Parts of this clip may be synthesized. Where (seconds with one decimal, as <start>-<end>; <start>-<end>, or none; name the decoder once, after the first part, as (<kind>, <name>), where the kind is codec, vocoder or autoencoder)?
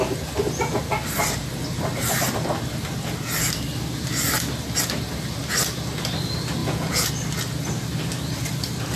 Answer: 6.6-7.1 (vocoder, Vocos)